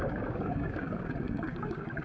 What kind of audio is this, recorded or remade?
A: remade